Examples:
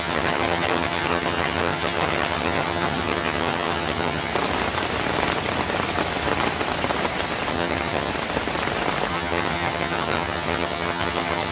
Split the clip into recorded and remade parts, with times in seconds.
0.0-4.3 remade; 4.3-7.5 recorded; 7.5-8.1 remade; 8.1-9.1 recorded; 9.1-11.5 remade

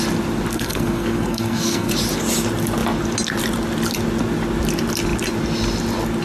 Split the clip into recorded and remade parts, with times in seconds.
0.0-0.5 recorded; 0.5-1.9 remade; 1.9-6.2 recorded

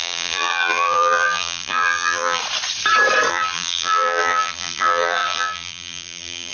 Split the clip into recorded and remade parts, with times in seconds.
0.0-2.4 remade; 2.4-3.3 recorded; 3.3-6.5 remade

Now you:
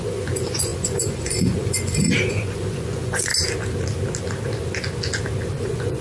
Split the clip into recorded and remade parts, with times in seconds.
0.0-3.3 remade; 3.3-5.6 recorded; 5.6-6.0 remade

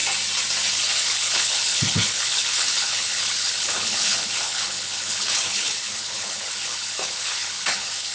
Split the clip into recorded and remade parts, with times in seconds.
0.0-0.7 recorded; 0.7-8.1 remade